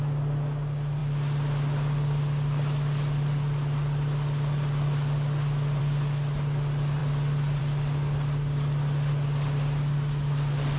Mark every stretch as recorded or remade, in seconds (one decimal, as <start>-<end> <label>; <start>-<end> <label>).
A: 0.0-10.8 recorded